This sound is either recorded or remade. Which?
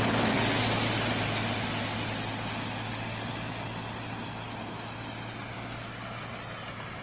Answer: recorded